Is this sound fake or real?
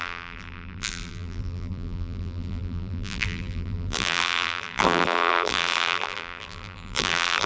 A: fake